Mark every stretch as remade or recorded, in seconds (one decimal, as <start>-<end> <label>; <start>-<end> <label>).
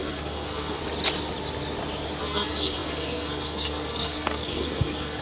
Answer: 0.0-0.8 remade; 0.8-2.2 recorded; 2.2-5.2 remade